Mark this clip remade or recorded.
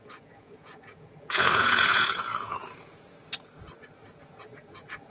remade